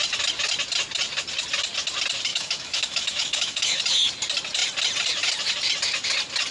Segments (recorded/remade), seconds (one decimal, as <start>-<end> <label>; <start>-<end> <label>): 0.0-2.3 recorded; 2.3-3.8 remade; 3.8-6.5 recorded